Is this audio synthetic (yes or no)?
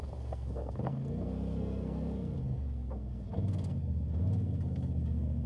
yes